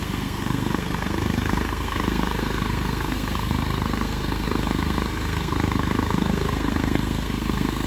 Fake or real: fake